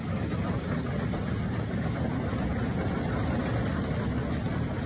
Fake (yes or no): no